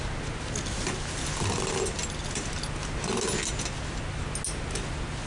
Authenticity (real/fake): real